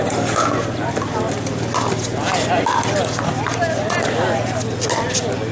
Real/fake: real